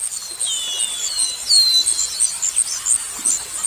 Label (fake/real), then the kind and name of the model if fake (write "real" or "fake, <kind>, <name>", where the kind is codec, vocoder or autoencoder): real